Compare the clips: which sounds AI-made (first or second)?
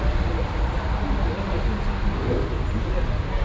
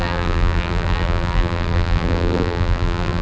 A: second